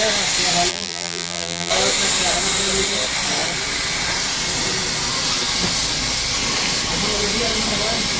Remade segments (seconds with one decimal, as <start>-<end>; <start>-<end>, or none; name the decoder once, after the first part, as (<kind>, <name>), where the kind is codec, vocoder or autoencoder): 0.7-1.7 (vocoder, BigVGAN v2)